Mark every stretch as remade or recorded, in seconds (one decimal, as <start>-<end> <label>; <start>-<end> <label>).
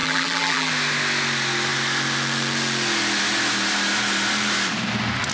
0.0-0.7 remade; 0.7-5.3 recorded